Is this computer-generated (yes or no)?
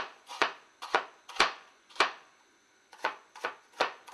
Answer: yes